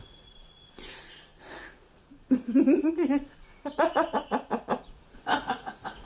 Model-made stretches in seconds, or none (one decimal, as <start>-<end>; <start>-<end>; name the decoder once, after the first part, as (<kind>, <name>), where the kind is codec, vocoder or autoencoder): 0.0-6.1 (vocoder, Vocos)

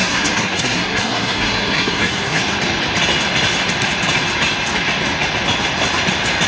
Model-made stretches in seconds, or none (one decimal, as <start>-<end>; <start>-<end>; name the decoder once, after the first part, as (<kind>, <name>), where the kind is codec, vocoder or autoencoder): 0.0-2.4 (codec, SNAC)